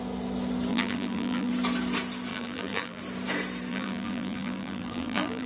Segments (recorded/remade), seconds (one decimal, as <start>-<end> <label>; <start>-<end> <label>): 0.0-0.7 recorded; 0.7-1.5 remade; 1.5-2.3 recorded; 2.3-3.0 remade; 3.0-3.7 recorded; 3.7-5.5 remade